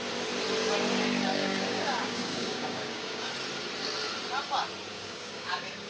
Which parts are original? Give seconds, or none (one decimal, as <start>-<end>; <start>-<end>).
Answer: 0.0-1.3; 3.3-4.9